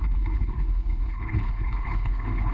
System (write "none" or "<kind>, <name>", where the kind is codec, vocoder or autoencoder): codec, HILCodec